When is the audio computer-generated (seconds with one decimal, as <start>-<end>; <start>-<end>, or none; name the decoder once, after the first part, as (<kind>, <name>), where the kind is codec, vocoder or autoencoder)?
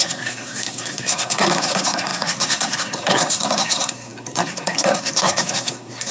0.0-6.1 (codec, SNAC)